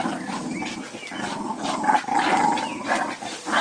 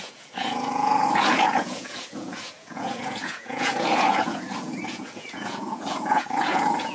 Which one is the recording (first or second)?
first